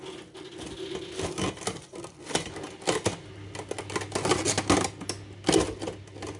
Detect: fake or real real